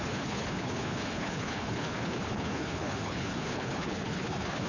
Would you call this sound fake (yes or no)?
yes